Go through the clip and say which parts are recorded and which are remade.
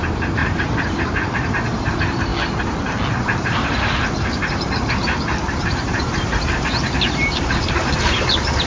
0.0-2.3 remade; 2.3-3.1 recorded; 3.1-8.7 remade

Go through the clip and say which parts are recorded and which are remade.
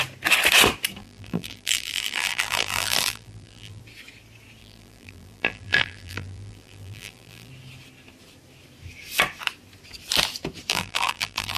0.0-1.0 recorded; 1.0-3.8 remade; 3.8-4.6 recorded; 4.6-7.5 remade; 7.5-10.7 recorded; 10.7-11.6 remade